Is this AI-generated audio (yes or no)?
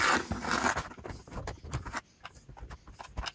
no